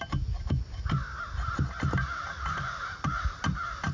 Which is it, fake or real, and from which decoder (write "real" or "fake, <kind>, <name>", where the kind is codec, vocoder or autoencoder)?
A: real